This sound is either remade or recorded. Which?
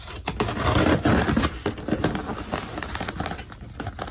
recorded